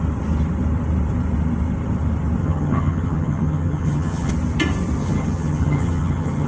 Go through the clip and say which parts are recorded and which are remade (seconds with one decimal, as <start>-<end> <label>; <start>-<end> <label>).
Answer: 0.0-2.4 recorded; 2.4-4.3 remade; 4.3-5.0 recorded; 5.0-6.5 remade